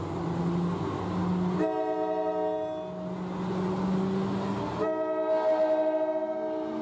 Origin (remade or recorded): recorded